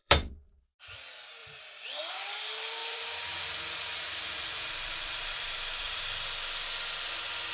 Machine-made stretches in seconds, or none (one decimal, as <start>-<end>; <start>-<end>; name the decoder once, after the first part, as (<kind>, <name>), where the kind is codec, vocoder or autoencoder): 0.0-0.8 (vocoder, BigVGAN v2); 1.4-2.1; 2.8-6.0